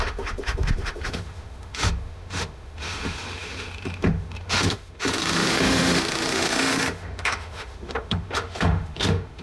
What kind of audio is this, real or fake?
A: fake